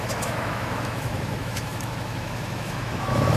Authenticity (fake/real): fake